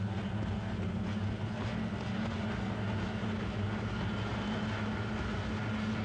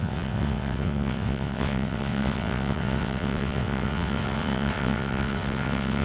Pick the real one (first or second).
first